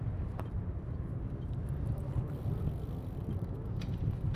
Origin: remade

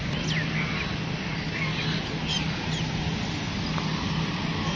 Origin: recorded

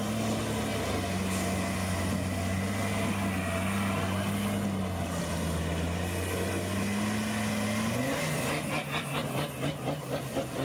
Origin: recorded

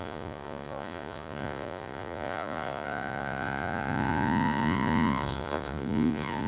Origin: remade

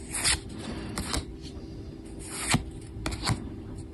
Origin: recorded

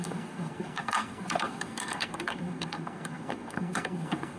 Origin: remade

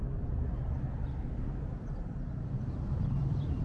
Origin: remade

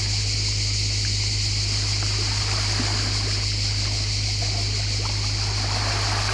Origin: recorded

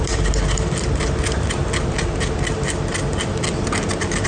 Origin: remade